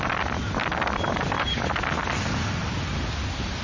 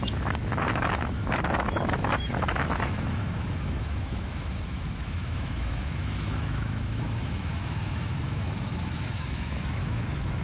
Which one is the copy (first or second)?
second